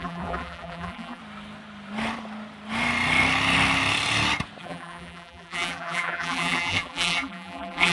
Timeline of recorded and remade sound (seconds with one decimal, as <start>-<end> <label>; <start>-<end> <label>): 0.0-1.2 remade; 1.2-4.6 recorded; 4.6-7.9 remade

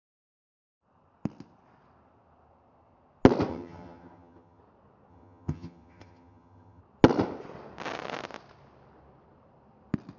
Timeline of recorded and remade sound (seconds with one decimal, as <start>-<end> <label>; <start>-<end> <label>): 0.0-3.5 recorded; 3.5-4.6 remade; 4.6-5.1 recorded; 5.1-6.8 remade; 6.8-10.2 recorded

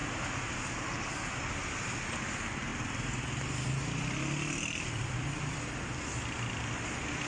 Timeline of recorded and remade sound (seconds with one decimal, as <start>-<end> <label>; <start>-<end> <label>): 0.0-7.3 recorded